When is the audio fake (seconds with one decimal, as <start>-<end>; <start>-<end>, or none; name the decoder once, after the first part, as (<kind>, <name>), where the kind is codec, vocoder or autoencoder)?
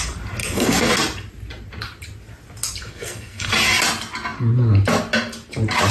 0.4-0.9 (codec, SNAC); 2.8-3.5